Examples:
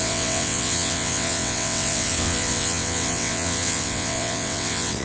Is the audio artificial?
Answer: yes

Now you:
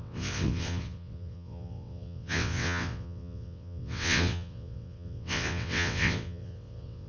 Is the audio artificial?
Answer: yes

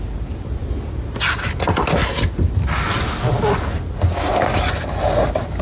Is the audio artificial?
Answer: no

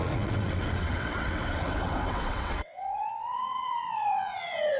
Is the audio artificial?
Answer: yes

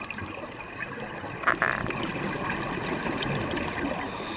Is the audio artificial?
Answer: no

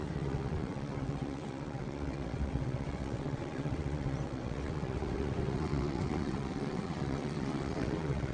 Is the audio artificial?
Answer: yes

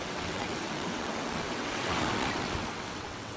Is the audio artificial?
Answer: yes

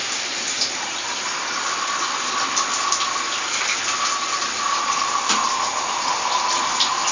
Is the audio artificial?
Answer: no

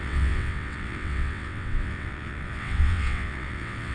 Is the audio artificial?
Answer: yes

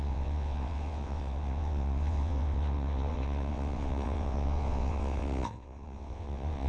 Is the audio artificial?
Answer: yes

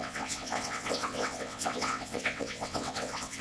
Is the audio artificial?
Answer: yes